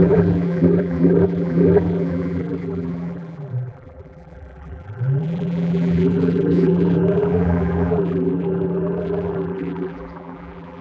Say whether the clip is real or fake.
fake